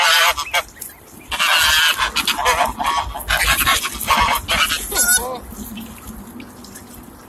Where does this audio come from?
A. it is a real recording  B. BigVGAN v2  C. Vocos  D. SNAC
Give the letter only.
A